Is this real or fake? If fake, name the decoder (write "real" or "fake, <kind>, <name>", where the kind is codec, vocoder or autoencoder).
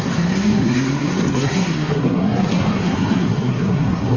fake, codec, SNAC